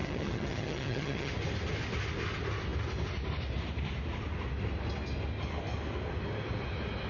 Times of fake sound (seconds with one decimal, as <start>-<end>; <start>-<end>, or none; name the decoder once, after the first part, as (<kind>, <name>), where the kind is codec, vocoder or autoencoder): 0.0-1.3 (vocoder, HiFi-GAN)